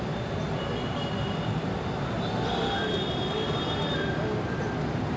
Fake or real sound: real